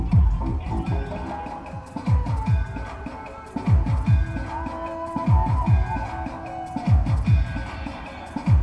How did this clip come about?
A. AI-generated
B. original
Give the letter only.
B